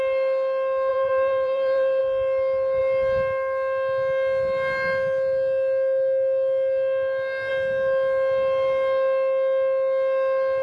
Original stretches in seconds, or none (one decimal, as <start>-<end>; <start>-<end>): 0.0-0.9; 2.0-10.6